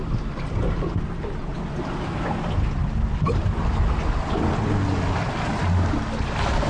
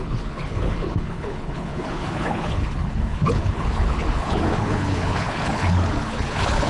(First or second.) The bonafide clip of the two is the first